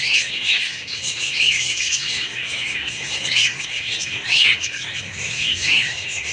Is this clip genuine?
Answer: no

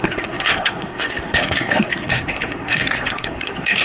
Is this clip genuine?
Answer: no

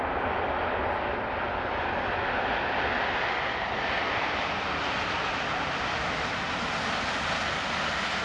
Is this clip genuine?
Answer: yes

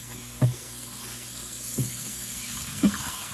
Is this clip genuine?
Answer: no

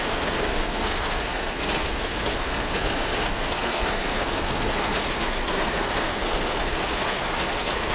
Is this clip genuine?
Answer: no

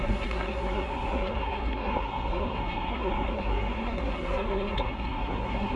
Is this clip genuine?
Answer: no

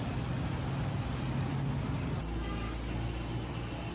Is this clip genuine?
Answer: yes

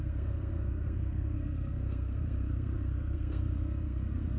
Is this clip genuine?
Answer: no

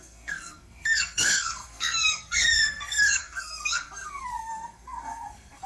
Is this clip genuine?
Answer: no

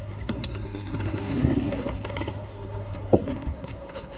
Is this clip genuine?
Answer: no